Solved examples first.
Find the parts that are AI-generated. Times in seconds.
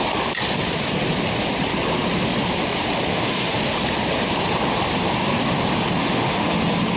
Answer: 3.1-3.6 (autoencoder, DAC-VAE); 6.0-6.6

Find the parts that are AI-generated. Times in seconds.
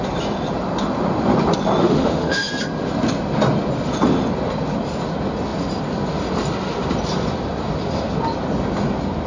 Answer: 1.8-2.5 (autoencoder, DAC-VAE)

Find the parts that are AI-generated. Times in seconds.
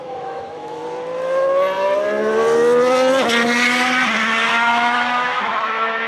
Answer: 0.0-0.8 (autoencoder, DAC-VAE); 4.5-6.1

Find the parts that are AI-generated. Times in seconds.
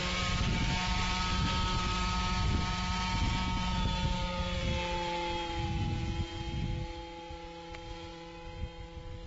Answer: none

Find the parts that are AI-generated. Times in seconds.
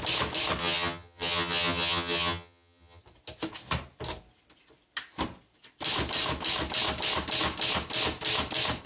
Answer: 0.6-3.0 (vocoder, HiFi-GAN)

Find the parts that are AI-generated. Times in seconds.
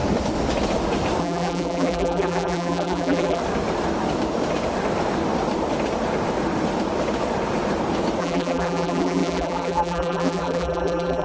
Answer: 1.2-3.4 (vocoder, BigVGAN v2); 8.2-11.2